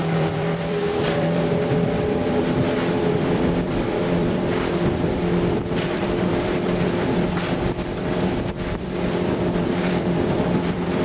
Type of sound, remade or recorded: remade